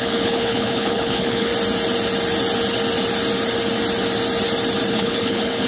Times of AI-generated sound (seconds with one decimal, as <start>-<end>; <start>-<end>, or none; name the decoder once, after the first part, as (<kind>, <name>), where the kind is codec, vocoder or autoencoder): 0.0-1.5 (codec, HILCodec); 4.9-5.7